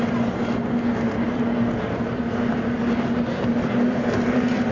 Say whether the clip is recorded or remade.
recorded